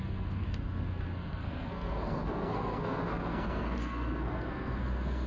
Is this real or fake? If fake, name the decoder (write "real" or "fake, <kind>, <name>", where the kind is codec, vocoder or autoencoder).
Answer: fake, codec, SNAC